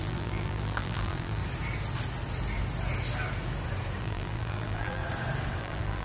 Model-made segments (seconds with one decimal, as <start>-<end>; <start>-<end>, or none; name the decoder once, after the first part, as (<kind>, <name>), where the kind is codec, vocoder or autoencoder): 0.0-1.4 (vocoder, BigVGAN v2); 4.0-5.0; 5.6-6.0